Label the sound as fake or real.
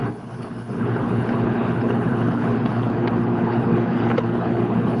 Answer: fake